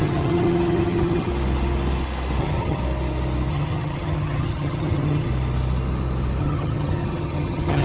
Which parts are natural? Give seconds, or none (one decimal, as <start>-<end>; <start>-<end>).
1.3-2.4; 2.8-3.5; 5.3-6.4

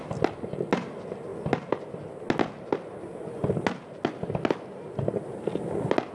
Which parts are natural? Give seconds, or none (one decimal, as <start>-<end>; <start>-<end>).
0.0-6.1

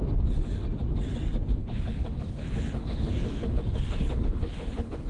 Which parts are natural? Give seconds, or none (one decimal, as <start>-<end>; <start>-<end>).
0.0-1.6

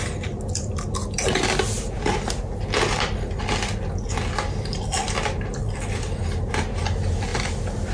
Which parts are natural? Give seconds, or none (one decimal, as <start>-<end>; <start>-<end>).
0.0-7.9

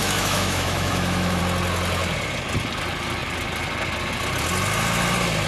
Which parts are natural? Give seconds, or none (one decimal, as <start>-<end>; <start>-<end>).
1.4-5.5

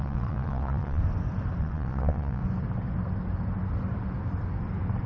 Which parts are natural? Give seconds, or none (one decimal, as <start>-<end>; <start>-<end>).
1.0-1.6; 2.4-5.1

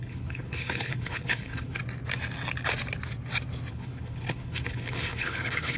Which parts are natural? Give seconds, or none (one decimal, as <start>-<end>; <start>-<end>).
1.8-3.7

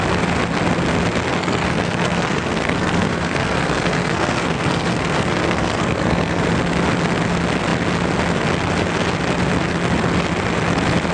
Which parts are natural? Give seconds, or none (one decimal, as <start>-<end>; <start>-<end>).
0.0-1.3; 6.4-11.1